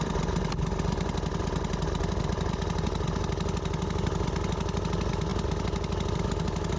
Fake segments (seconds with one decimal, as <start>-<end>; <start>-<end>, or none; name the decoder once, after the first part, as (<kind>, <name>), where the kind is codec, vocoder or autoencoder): none